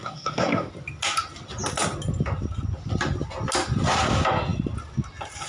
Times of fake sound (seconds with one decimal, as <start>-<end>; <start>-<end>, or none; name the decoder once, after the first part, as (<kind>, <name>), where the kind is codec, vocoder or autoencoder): 0.0-0.7 (codec, SNAC)